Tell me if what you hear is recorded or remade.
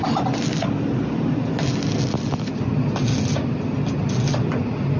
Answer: recorded